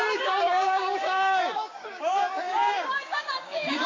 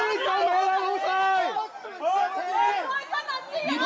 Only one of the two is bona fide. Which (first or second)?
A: second